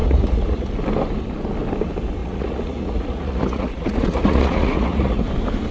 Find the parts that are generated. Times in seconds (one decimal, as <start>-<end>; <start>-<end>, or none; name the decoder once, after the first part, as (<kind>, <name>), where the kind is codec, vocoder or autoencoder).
0.0-0.7 (vocoder, Vocos); 2.2-5.2